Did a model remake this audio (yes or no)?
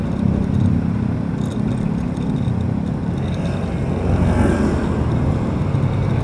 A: no